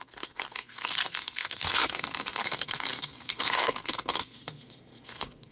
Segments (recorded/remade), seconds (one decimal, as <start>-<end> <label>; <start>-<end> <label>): 0.0-5.5 remade